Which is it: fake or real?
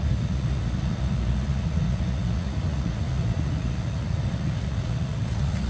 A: fake